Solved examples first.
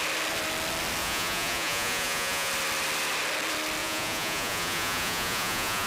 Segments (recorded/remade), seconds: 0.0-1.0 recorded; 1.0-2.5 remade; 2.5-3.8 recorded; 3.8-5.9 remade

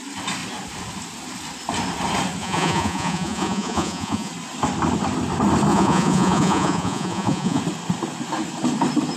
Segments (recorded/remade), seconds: 0.0-2.4 recorded; 2.4-4.3 remade; 4.3-5.7 recorded; 5.7-7.6 remade; 7.6-9.2 recorded

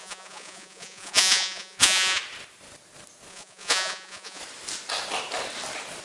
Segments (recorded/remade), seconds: 0.0-2.2 remade; 2.2-3.3 recorded; 3.3-4.4 remade; 4.4-6.0 recorded

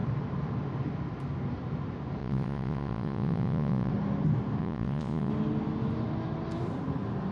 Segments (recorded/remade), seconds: 0.0-2.2 recorded; 2.2-3.9 remade; 3.9-4.6 recorded; 4.6-5.3 remade; 5.3-7.3 recorded

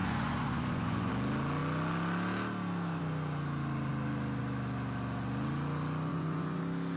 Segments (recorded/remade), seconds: 0.0-1.1 remade; 1.1-6.1 recorded; 6.1-6.6 remade; 6.6-7.0 recorded

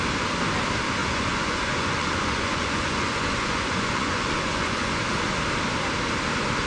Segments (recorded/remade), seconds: 0.0-1.0 recorded; 1.0-5.0 remade; 5.0-6.7 recorded

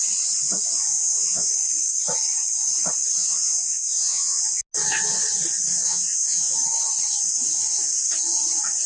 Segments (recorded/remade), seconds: 0.0-0.9 recorded; 0.9-1.5 remade; 1.5-3.2 recorded; 3.2-4.4 remade; 4.4-5.7 recorded; 5.7-6.5 remade; 6.5-8.9 recorded

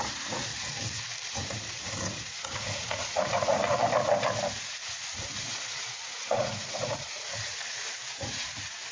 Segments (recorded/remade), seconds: 0.0-0.5 remade; 0.5-1.3 recorded; 1.3-3.6 remade; 3.6-4.6 recorded; 4.6-8.9 remade